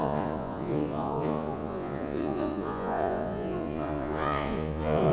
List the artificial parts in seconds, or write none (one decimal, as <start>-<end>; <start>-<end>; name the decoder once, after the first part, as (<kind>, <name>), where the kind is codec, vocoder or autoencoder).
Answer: 0.0-5.1 (vocoder, Vocos)